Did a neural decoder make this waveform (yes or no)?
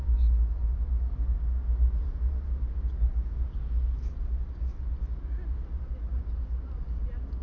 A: no